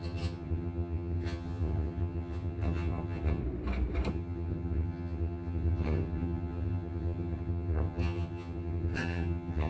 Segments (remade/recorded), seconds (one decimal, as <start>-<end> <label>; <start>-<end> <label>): 0.0-3.4 remade; 3.4-4.1 recorded; 4.1-9.7 remade